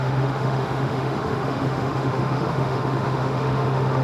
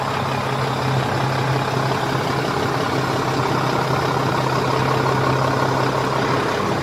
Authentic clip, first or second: second